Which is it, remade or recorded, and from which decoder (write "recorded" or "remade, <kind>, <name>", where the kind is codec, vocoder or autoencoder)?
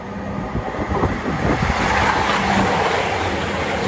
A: recorded